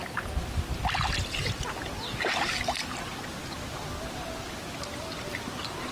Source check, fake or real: real